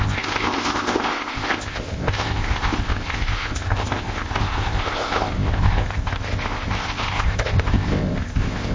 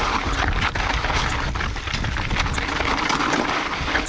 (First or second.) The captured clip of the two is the second